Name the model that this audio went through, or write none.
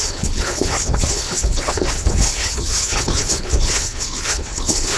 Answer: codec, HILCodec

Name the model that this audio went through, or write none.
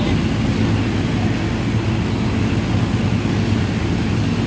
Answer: none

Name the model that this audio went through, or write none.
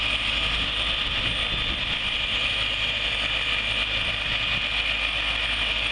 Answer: none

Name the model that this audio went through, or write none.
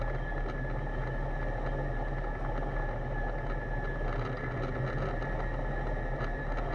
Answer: none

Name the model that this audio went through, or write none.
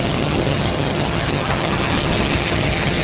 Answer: vocoder, HiFi-GAN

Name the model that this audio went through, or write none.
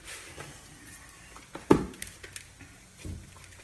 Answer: none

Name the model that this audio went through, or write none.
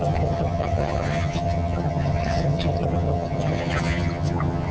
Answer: vocoder, HiFi-GAN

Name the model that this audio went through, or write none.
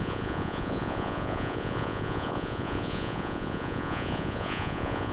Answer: vocoder, Vocos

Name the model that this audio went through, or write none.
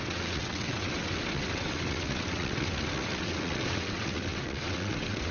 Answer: vocoder, WaveNeXt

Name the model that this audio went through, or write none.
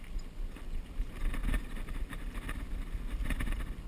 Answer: none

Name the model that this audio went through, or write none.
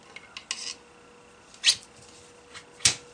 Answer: none